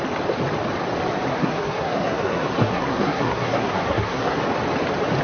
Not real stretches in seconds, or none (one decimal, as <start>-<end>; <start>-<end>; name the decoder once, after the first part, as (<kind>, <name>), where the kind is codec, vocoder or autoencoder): 1.3-4.4 (codec, SNAC)